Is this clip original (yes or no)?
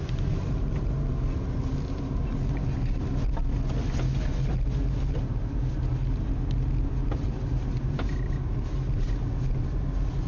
yes